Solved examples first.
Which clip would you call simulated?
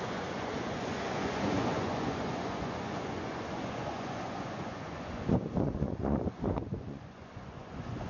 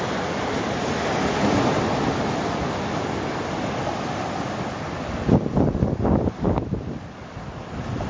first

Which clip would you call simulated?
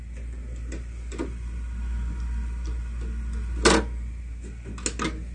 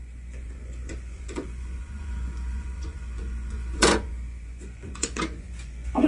second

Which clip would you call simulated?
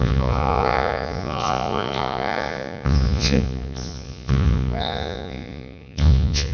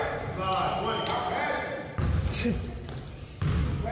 first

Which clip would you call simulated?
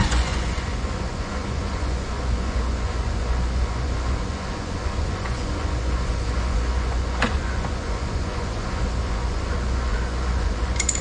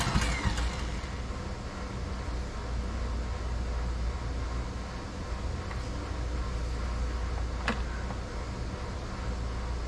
first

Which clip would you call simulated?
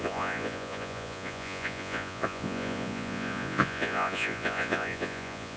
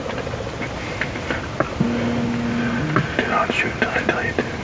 first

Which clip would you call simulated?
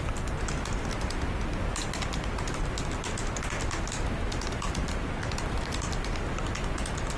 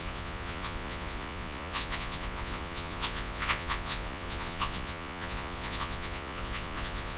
second